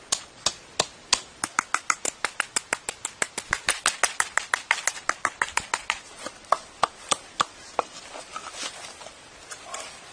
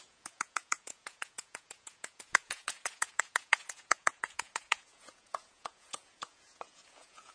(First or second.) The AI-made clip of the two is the second